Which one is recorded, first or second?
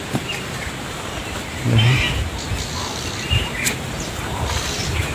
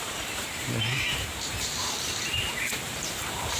first